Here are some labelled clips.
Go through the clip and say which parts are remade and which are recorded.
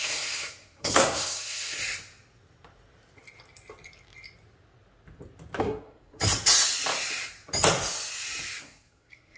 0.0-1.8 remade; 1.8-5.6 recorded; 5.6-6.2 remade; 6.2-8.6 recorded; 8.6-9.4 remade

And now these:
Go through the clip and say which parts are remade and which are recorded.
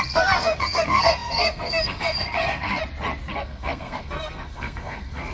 0.0-2.8 remade; 2.8-3.3 recorded; 3.3-5.3 remade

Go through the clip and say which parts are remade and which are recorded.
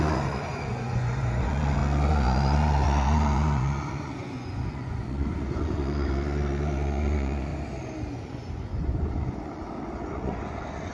0.0-7.5 remade; 7.5-8.1 recorded; 8.1-10.9 remade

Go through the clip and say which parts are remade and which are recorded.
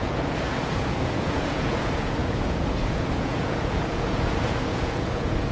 0.0-5.5 remade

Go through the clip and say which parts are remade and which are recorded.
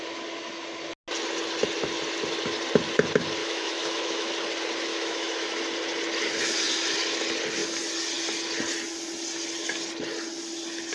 0.0-3.4 recorded; 3.4-4.3 remade; 4.3-4.9 recorded; 4.9-5.6 remade; 5.6-10.9 recorded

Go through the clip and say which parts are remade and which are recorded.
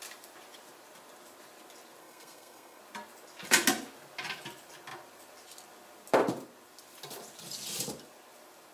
0.0-2.0 recorded; 2.0-2.8 remade; 2.8-8.7 recorded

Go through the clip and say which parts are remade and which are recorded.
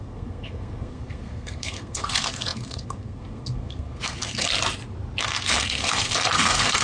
0.0-4.5 remade; 4.5-5.2 recorded; 5.2-6.8 remade